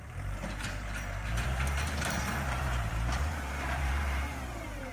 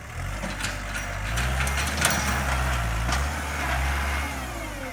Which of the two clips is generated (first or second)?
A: first